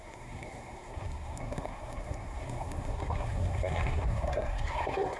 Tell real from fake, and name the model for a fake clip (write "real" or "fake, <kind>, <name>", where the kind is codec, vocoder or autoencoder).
fake, codec, SNAC